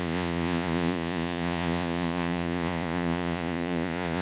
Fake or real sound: fake